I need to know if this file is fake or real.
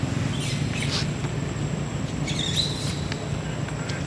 real